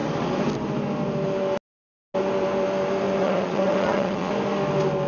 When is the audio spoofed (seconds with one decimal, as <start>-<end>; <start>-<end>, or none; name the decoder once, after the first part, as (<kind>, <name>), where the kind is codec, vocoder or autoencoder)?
3.2-4.3 (vocoder, Vocos)